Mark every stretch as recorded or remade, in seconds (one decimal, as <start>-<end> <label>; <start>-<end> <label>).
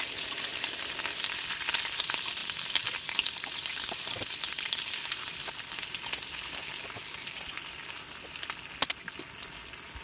0.0-0.5 recorded; 0.5-1.7 remade; 1.7-2.4 recorded; 2.4-5.4 remade; 5.4-10.0 recorded